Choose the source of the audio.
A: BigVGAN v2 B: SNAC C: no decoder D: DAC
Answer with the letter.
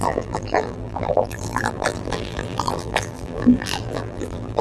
A